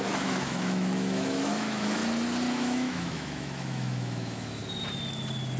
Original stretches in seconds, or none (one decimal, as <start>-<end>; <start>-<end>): 2.0-2.5; 4.6-5.6